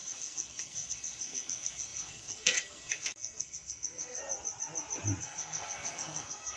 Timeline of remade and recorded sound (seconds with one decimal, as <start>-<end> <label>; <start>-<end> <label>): 0.0-4.2 remade; 4.2-5.2 recorded; 5.2-6.6 remade